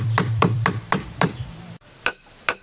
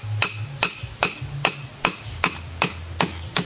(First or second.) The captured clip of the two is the second